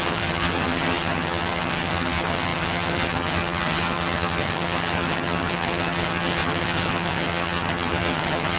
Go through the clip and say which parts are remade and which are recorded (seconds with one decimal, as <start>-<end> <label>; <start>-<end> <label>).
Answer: 0.0-8.6 remade